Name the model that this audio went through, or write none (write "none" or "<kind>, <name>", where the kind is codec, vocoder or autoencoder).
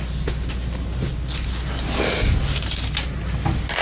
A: none